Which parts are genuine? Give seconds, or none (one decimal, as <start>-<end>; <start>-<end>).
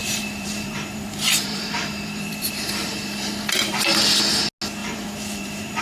3.5-4.8